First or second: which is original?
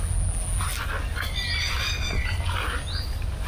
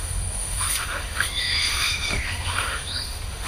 first